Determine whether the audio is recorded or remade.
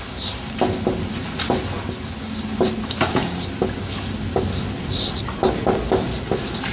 recorded